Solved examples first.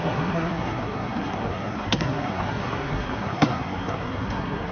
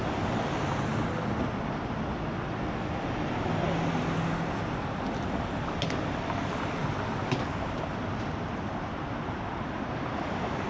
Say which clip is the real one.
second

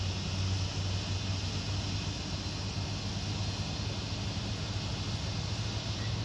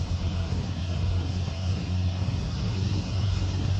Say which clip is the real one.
first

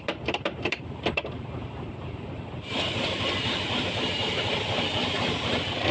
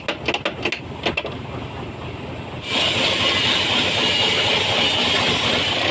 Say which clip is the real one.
second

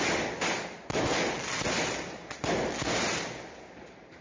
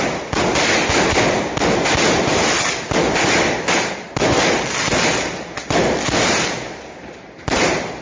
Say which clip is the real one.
first